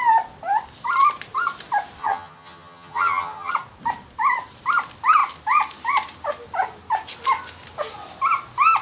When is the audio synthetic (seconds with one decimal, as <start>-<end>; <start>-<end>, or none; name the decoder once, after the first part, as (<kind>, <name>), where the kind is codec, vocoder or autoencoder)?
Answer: 2.0-3.5 (vocoder, HiFi-GAN)